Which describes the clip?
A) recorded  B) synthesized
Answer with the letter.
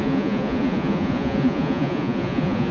B